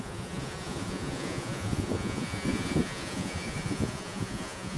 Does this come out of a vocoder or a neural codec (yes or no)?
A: yes